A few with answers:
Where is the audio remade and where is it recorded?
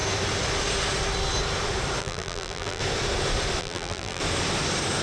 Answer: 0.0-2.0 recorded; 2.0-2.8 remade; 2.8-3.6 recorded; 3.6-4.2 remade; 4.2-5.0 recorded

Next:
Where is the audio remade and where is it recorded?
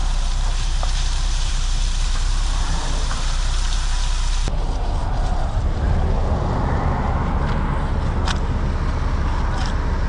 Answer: 0.0-3.9 remade; 3.9-5.0 recorded; 5.0-6.0 remade; 6.0-10.1 recorded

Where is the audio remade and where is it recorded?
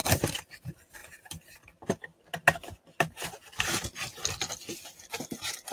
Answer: 0.0-0.5 remade; 0.5-1.0 recorded; 1.0-1.6 remade; 1.6-5.7 recorded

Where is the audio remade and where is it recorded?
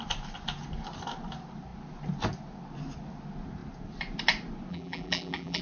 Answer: 0.0-4.7 recorded; 4.7-5.6 remade